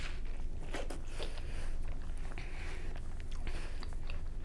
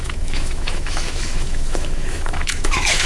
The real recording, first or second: first